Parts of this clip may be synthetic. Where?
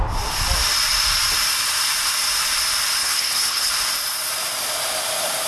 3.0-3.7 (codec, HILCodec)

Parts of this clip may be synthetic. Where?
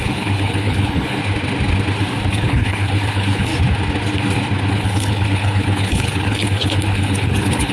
0.0-1.2 (codec, HILCodec); 2.3-3.5; 4.7-7.7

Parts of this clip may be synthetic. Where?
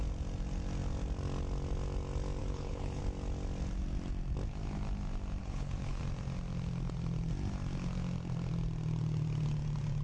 2.4-3.0 (codec, HILCodec); 5.4-6.0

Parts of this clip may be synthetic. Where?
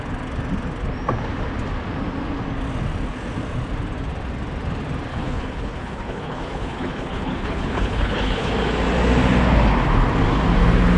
5.1-8.5 (codec, HILCodec)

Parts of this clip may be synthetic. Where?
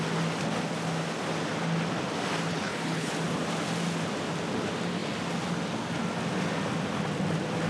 2.5-3.1 (codec, HILCodec)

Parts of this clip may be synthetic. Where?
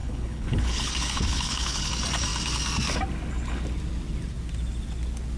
0.0-1.9 (codec, HILCodec)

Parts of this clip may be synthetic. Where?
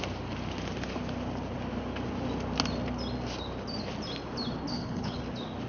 4.7-5.2 (codec, HILCodec)